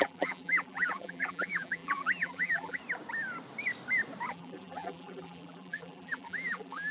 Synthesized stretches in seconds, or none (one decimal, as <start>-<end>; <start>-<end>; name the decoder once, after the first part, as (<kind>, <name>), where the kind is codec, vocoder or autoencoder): 0.0-2.8 (vocoder, BigVGAN v2); 4.3-6.9